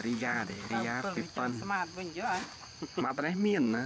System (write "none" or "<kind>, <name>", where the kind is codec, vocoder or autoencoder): vocoder, Vocos